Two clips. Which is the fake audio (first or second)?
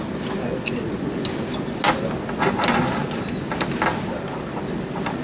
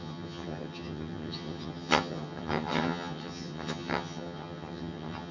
second